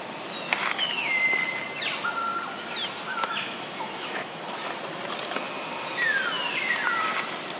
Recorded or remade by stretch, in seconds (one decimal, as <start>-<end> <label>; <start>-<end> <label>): 0.0-0.6 recorded; 0.6-1.3 remade; 1.3-3.1 recorded; 3.1-4.7 remade; 4.7-7.6 recorded